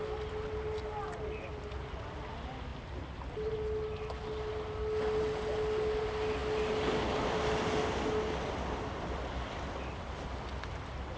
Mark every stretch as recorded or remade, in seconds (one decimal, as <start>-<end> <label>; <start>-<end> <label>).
0.0-11.2 recorded